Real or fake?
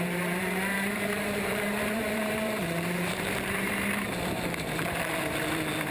fake